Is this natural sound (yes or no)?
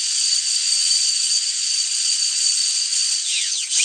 no